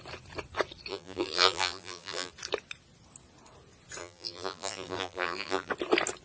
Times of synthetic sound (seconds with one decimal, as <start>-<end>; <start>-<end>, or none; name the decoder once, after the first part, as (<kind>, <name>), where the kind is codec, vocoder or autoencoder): 0.9-2.3 (vocoder, BigVGAN v2); 4.0-5.7

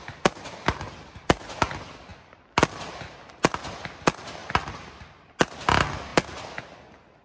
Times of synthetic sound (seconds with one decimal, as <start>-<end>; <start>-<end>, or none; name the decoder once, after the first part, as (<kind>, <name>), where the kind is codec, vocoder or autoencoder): 2.1-2.7 (vocoder, BigVGAN v2); 4.4-5.0

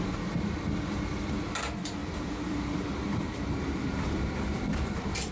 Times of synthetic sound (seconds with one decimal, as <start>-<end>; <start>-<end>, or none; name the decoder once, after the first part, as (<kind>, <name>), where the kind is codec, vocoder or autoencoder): 2.0-5.3 (vocoder, BigVGAN v2)

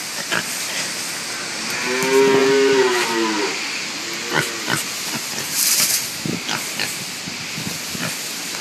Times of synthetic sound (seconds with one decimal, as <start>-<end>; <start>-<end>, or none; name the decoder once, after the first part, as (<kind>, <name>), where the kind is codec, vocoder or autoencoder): 2.4-3.9 (vocoder, BigVGAN v2)

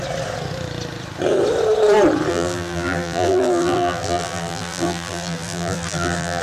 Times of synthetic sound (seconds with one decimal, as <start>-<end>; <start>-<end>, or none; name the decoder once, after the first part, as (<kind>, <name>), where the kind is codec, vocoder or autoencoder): 2.3-6.4 (vocoder, BigVGAN v2)